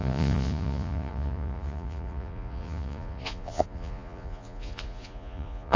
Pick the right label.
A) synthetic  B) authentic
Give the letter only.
A